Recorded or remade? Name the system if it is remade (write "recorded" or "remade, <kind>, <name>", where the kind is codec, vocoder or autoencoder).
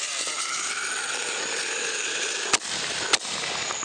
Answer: recorded